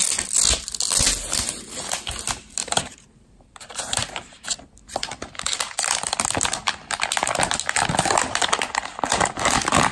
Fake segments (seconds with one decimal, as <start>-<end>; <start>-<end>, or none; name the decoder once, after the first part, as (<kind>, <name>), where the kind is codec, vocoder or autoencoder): 2.6-4.5 (vocoder, BigVGAN v2)